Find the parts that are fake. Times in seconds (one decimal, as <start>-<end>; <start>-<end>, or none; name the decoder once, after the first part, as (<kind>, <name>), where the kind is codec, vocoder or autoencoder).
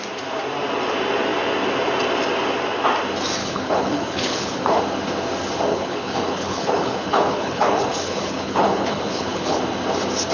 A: 3.4-4.8 (codec, HILCodec); 5.7-9.6